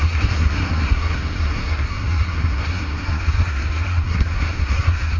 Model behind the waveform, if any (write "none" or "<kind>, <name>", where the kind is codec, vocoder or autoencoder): codec, SNAC